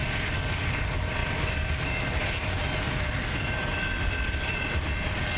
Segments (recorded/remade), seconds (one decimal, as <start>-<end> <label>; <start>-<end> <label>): 0.0-5.4 recorded